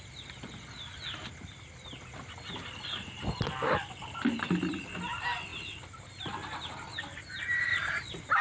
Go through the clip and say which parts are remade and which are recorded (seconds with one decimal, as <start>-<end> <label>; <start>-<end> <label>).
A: 0.0-7.7 recorded; 7.7-8.4 remade